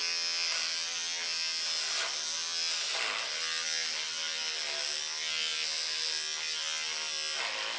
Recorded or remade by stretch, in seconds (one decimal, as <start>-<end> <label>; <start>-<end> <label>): 0.0-7.8 recorded